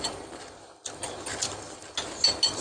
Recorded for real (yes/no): yes